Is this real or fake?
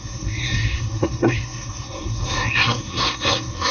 fake